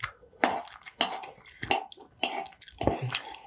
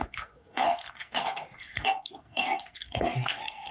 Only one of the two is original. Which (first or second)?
first